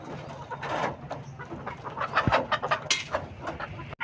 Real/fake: real